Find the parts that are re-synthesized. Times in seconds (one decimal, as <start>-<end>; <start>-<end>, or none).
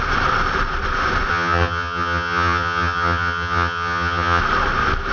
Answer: 1.3-4.4